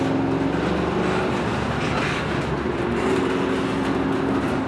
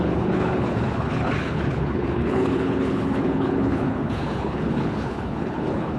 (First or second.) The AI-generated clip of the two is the second